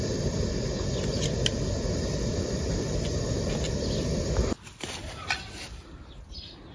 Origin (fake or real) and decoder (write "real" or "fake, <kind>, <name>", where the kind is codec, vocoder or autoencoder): real